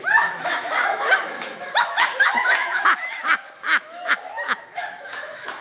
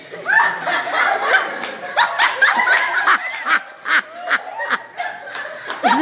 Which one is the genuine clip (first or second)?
second